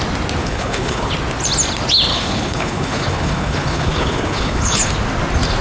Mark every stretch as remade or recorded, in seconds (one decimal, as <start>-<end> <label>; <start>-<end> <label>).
0.0-0.4 recorded; 0.4-1.1 remade; 1.1-2.1 recorded; 2.1-4.9 remade; 4.9-5.6 recorded